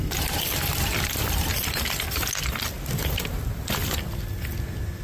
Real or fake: real